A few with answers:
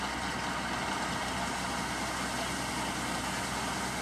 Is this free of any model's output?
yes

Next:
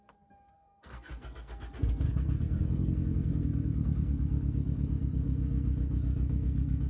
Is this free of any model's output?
no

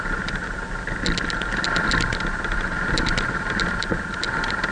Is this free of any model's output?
yes